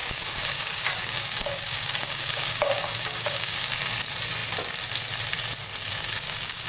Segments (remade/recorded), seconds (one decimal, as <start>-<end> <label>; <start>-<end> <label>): 0.0-4.0 remade; 4.0-5.9 recorded; 5.9-6.7 remade